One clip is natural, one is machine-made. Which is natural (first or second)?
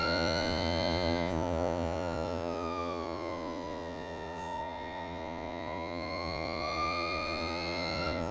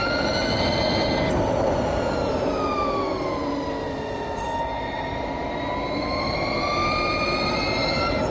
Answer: second